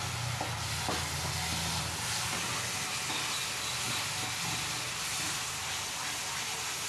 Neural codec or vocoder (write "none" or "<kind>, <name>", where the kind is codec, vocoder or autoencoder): none